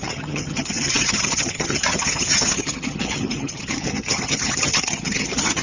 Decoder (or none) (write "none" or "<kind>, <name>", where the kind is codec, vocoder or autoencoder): vocoder, HiFi-GAN